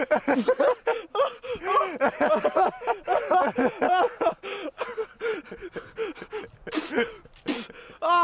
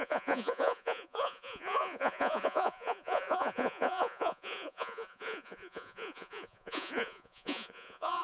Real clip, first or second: first